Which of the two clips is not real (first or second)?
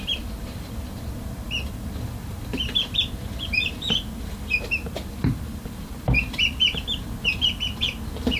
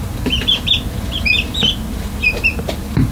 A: first